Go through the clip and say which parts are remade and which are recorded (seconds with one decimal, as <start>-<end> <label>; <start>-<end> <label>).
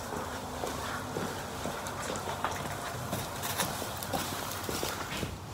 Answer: 0.0-0.8 remade; 0.8-2.0 recorded; 2.0-5.5 remade